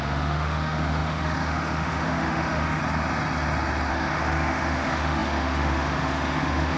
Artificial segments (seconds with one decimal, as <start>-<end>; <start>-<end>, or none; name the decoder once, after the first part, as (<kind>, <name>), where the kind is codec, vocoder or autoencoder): 0.0-2.8 (autoencoder, DAC-VAE); 3.9-6.8